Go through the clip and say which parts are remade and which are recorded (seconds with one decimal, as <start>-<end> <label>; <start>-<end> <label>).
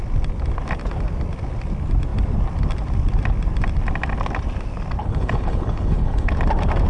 0.0-5.0 recorded; 5.0-6.3 remade; 6.3-6.9 recorded